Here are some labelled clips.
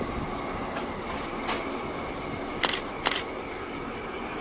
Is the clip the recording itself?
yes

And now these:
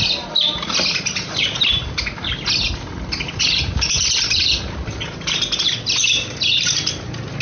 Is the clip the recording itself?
yes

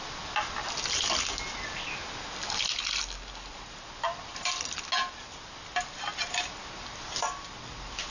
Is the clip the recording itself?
yes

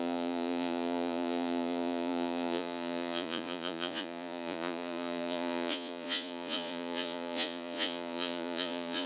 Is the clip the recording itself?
no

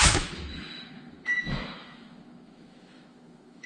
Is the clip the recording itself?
no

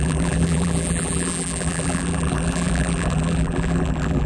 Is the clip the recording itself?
no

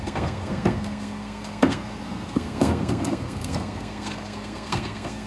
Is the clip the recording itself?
no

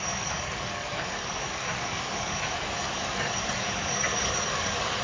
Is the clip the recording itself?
no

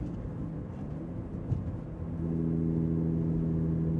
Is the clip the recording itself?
yes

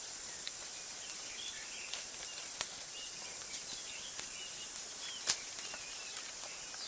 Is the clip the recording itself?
yes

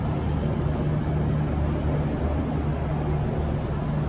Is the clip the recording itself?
yes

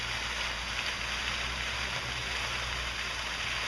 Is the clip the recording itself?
yes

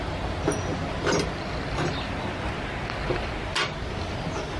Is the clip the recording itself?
yes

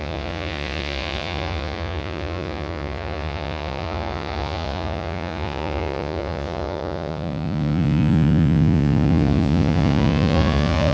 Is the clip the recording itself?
no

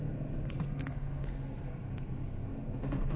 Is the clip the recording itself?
no